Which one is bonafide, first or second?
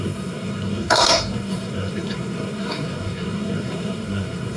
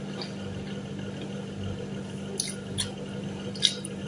second